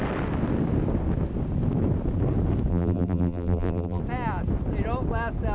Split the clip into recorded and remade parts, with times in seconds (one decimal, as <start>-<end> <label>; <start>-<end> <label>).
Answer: 0.0-2.7 recorded; 2.7-4.0 remade; 4.0-5.5 recorded